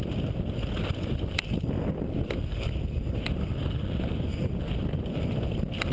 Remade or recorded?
recorded